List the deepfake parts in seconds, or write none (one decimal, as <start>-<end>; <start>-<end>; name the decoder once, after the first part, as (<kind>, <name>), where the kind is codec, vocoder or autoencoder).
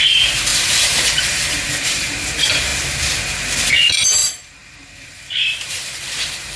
0.0-2.7 (vocoder, BigVGAN v2); 3.7-6.6